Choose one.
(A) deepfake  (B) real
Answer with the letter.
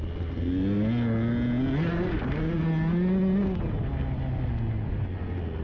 B